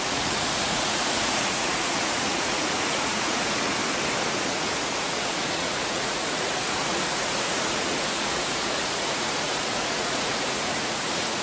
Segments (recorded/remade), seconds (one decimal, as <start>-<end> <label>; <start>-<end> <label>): 0.0-3.8 remade; 3.8-4.3 recorded; 4.3-11.4 remade